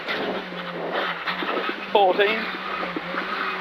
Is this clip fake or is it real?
real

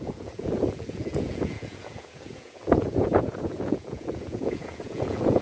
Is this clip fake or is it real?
fake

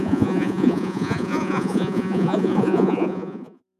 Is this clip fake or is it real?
fake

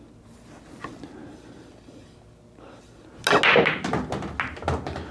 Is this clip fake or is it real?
real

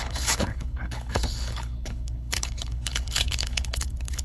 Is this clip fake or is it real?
fake